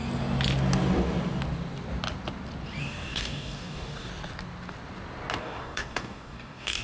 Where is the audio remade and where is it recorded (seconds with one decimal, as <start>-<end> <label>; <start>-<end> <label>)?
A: 0.0-2.8 recorded; 2.8-4.1 remade; 4.1-5.4 recorded; 5.4-6.8 remade